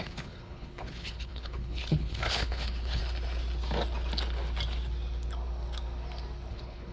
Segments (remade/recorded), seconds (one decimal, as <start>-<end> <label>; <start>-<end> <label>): 0.0-3.0 remade; 3.0-6.5 recorded; 6.5-6.9 remade